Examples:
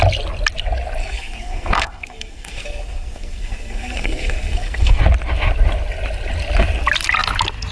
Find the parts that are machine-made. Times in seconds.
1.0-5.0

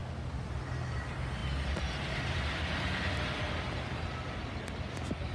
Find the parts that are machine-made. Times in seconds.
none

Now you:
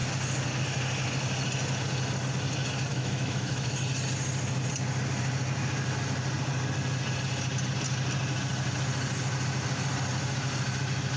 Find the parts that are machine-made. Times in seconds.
2.9-3.7

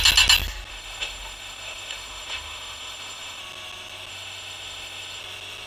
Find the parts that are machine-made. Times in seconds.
0.7-3.4; 4.1-5.2